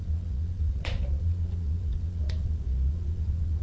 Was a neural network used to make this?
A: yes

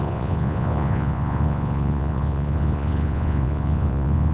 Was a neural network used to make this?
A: yes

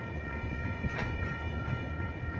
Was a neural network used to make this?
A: yes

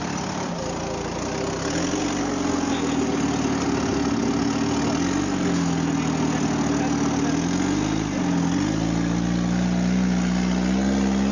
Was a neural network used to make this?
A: no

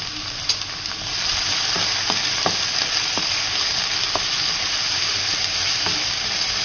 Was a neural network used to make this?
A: no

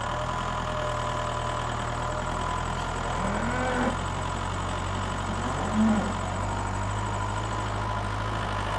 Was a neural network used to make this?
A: no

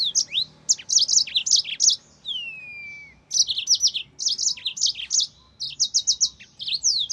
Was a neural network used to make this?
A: no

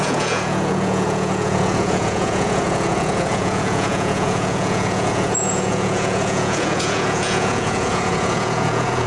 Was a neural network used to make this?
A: yes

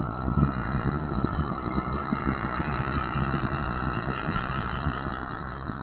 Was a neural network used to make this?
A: yes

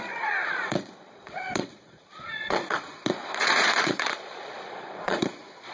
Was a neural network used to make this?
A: yes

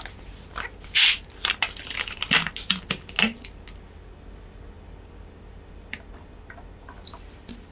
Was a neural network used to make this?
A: no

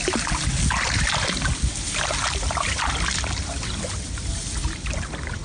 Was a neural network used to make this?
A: no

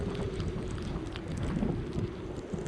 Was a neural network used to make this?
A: no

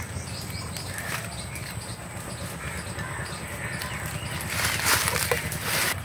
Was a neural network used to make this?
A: no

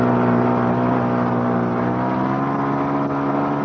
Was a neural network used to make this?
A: no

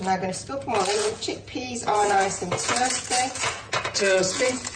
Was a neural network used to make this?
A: yes